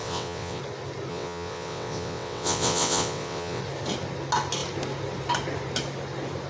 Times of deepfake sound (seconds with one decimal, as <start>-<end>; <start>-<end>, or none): 0.0-0.6; 1.1-3.6